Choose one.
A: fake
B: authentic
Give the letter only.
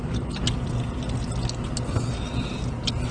B